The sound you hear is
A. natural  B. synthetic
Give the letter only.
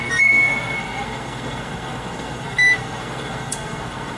B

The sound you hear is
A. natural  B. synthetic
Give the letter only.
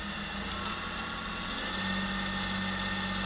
A